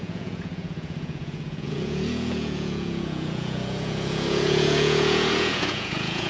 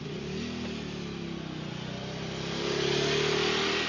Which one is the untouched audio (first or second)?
second